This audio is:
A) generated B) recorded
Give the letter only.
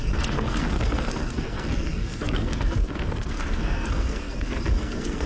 A